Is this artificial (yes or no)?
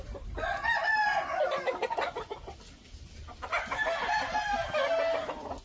no